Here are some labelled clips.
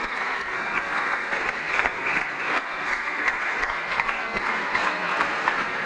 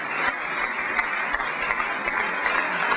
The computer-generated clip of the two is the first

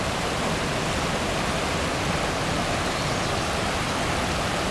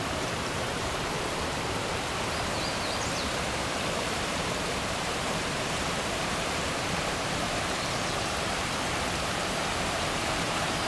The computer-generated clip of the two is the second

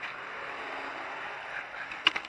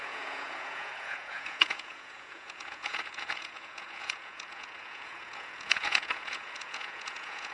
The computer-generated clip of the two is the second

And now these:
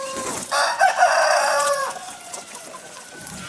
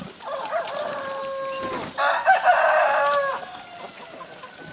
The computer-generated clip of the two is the first